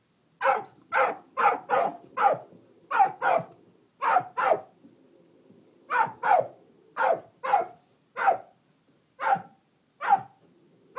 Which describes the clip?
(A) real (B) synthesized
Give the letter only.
A